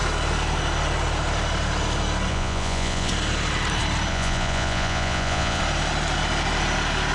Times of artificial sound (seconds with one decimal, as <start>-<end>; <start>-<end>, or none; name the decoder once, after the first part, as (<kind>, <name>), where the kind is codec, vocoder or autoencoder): 2.3-3.1 (vocoder, Vocos); 4.1-5.6